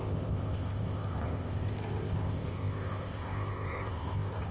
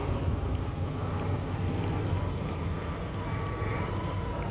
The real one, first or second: second